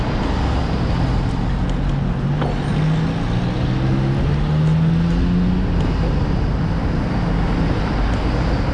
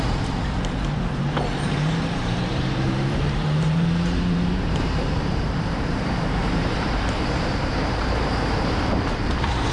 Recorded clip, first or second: first